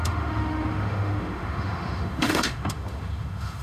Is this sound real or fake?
fake